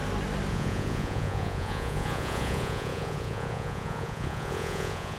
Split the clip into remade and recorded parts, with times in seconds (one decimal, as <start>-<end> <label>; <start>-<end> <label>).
0.0-0.5 recorded; 0.5-5.2 remade